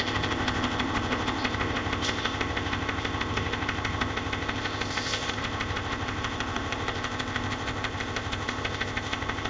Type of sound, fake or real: fake